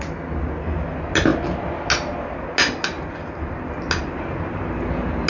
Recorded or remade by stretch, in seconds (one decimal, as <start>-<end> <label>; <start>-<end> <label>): 0.0-5.3 recorded